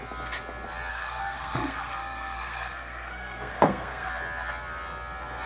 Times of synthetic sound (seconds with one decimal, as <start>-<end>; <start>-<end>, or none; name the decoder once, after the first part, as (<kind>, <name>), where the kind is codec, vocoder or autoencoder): 0.9-4.1 (codec, SNAC)